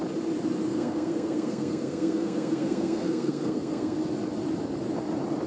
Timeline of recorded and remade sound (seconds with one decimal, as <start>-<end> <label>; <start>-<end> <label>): 0.0-0.7 recorded; 0.7-4.0 remade; 4.0-5.5 recorded